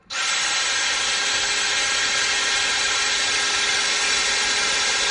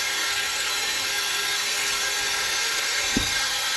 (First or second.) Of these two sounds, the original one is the first